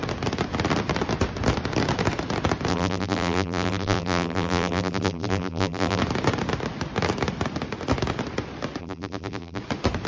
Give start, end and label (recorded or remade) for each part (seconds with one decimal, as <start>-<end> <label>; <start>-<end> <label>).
0.0-2.7 recorded; 2.7-6.0 remade; 6.0-8.8 recorded; 8.8-9.6 remade; 9.6-10.1 recorded